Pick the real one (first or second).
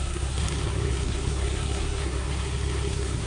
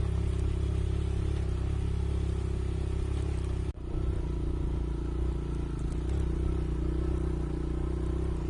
second